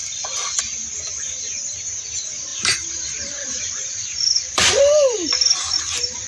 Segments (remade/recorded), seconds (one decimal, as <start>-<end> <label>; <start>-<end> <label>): 0.0-0.6 remade; 0.6-2.5 recorded; 2.5-4.7 remade; 4.7-6.3 recorded